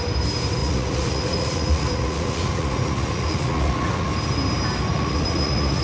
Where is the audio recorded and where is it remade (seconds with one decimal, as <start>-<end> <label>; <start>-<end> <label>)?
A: 0.0-0.6 recorded; 0.6-4.1 remade; 4.1-4.9 recorded; 4.9-5.8 remade